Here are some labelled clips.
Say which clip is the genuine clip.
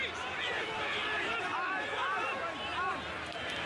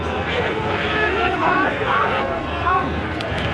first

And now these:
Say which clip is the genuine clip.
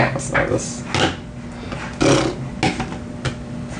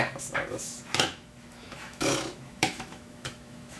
first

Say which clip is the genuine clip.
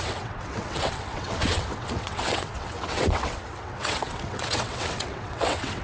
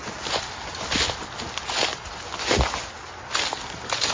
second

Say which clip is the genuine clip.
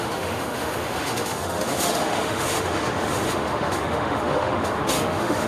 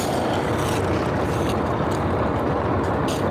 second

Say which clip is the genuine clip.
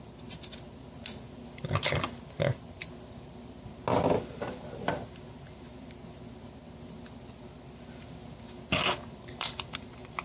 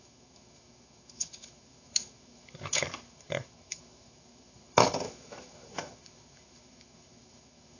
first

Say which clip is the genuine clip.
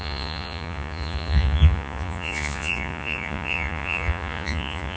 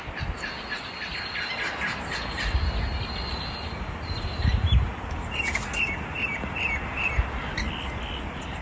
second